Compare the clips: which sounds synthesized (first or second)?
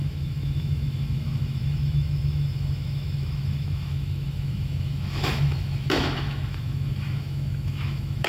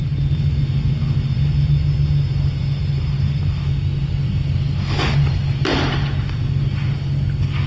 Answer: first